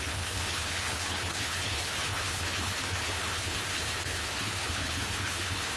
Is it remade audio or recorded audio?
remade